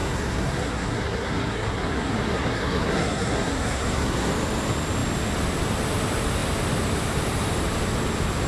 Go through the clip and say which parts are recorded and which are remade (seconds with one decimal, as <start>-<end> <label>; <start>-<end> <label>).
0.0-4.3 remade; 4.3-8.5 recorded